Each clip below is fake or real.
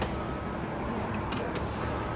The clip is real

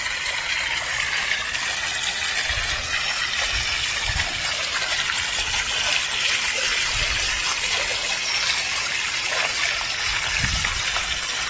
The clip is real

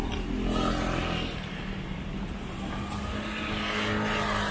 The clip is real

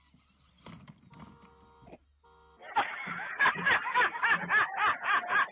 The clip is real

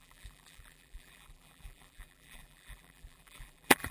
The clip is fake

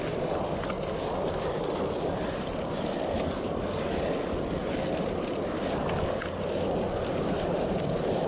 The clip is real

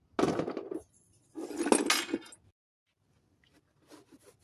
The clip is real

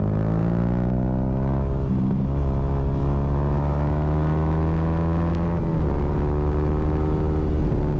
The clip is real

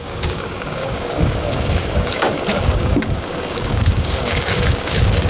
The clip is fake